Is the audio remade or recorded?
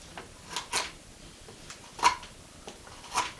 recorded